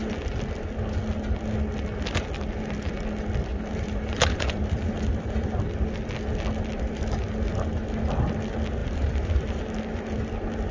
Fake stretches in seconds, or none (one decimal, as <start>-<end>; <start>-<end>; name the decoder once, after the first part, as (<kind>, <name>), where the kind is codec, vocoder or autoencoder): 3.5-5.5 (vocoder, BigVGAN v2); 8.8-9.6